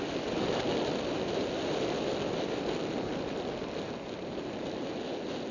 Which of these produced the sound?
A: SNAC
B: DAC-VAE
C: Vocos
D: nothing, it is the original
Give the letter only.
D